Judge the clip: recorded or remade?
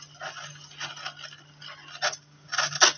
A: recorded